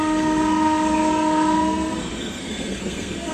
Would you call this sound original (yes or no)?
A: no